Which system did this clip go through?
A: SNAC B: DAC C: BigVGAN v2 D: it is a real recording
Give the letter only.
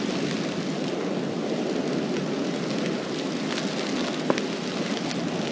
D